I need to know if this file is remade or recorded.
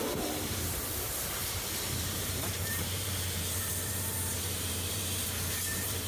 remade